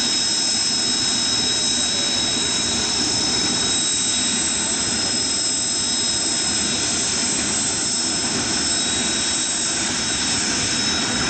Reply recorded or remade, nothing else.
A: recorded